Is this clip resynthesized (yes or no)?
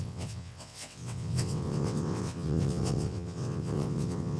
yes